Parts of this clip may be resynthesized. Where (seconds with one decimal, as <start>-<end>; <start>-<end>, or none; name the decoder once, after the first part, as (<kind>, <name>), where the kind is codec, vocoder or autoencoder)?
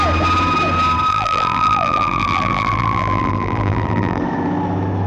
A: 1.1-4.2 (vocoder, BigVGAN v2)